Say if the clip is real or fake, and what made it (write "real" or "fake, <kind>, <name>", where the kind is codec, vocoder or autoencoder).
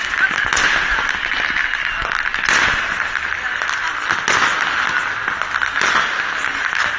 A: real